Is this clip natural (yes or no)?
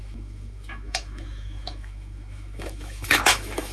no